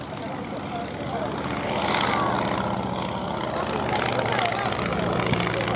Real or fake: real